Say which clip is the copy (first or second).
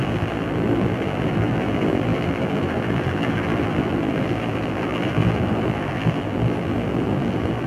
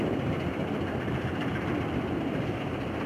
first